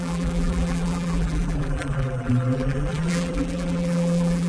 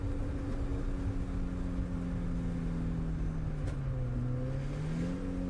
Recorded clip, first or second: second